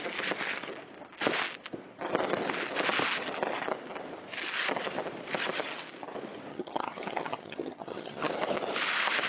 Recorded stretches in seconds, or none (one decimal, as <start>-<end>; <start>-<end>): 0.0-6.5; 8.3-9.3